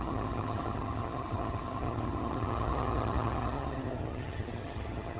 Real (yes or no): no